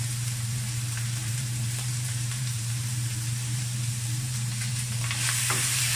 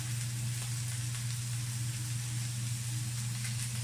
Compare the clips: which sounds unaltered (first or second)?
second